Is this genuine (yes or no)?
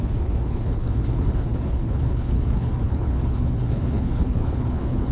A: no